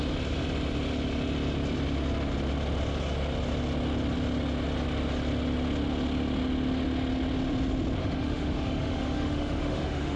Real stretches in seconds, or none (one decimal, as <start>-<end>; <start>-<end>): 0.0-8.0